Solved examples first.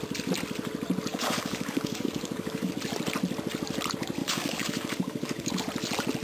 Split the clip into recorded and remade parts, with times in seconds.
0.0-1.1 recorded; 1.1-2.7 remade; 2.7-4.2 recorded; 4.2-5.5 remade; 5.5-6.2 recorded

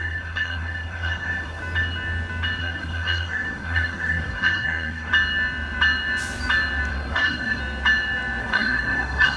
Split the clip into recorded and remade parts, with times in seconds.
0.0-1.6 remade; 1.6-2.6 recorded; 2.6-5.1 remade; 5.1-6.9 recorded; 6.9-7.6 remade; 7.6-8.4 recorded; 8.4-9.4 remade

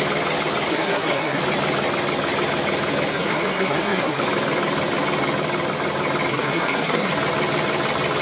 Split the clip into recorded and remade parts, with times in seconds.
0.0-0.7 recorded; 0.7-1.4 remade; 1.4-3.1 recorded; 3.1-4.2 remade; 4.2-6.3 recorded; 6.3-7.1 remade; 7.1-8.2 recorded

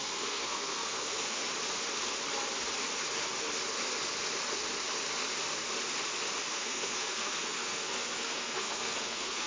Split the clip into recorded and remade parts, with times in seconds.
0.0-1.4 remade; 1.4-6.5 recorded; 6.5-9.5 remade

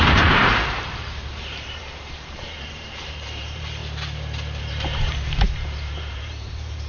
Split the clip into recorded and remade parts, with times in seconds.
0.0-3.8 remade; 3.8-4.6 recorded; 4.6-6.9 remade

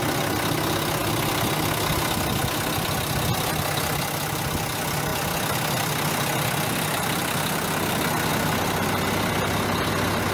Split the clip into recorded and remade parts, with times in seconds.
0.0-10.3 recorded

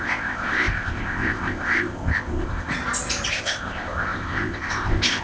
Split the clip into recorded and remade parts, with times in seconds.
0.0-2.7 remade; 2.7-3.3 recorded; 3.3-5.2 remade

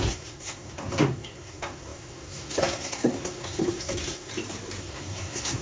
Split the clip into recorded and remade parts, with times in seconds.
0.0-4.3 remade; 4.3-4.8 recorded; 4.8-5.6 remade